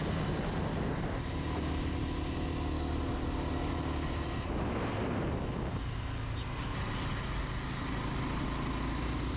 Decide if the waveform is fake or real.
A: real